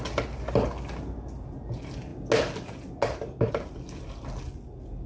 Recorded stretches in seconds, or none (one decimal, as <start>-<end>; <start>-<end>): 0.0-5.1